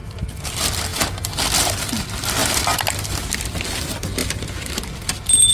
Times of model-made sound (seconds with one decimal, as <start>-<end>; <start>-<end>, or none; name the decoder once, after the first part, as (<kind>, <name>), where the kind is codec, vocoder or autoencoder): 0.0-0.5 (vocoder, BigVGAN v2)